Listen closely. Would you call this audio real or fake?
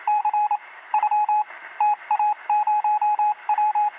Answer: fake